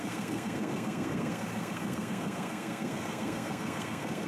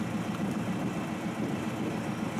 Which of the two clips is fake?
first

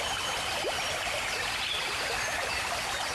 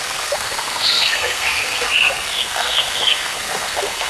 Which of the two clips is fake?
second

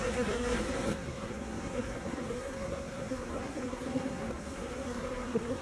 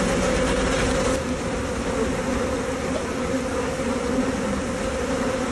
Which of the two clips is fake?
first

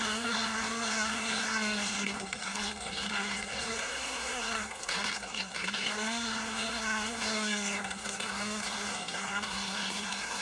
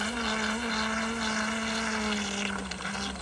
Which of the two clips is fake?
first